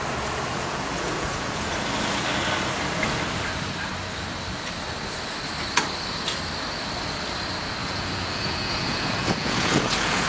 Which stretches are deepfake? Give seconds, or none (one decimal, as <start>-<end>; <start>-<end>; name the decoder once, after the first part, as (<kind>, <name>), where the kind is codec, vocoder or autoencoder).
0.5-1.7 (vocoder, Vocos); 7.8-10.3